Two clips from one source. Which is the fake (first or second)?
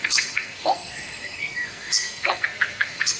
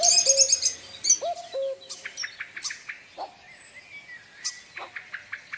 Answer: first